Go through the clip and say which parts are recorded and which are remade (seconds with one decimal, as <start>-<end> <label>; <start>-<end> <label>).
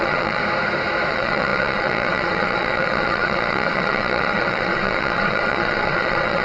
0.0-0.4 remade; 0.4-1.1 recorded; 1.1-6.4 remade